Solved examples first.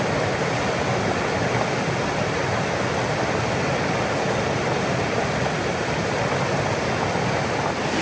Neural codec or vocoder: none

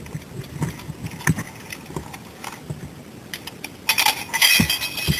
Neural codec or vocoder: none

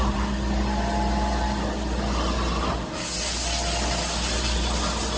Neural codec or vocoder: none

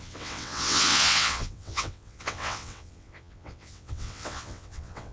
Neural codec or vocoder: vocoder, WaveNeXt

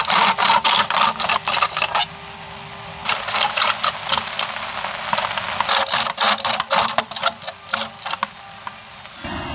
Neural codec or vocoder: none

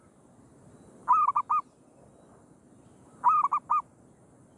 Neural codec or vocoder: none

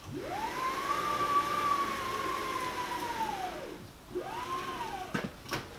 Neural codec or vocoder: none